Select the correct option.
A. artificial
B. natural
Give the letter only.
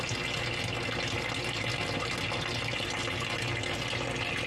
B